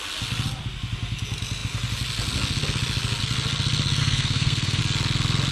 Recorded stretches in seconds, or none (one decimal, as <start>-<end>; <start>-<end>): 0.0-4.0; 4.8-5.5